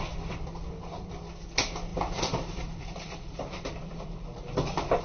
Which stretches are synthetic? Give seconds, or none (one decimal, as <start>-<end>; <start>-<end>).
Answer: 1.9-5.0